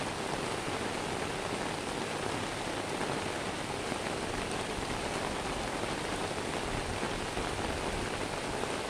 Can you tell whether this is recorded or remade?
recorded